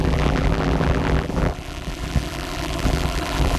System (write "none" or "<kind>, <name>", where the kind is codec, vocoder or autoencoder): vocoder, BigVGAN v2